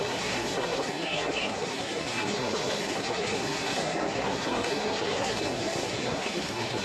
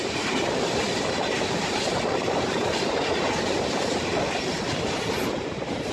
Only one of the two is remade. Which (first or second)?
first